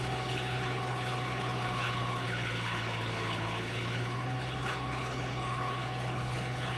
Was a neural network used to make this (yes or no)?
yes